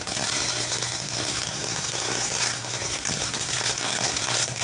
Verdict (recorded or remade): remade